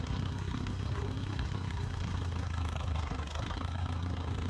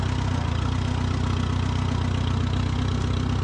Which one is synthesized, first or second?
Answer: first